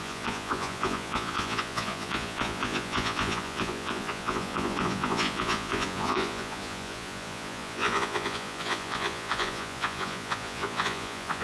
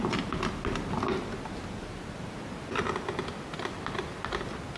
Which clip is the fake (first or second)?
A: first